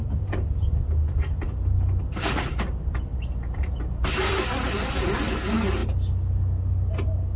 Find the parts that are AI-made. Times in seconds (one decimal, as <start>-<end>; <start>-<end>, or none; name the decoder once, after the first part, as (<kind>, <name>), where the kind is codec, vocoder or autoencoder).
none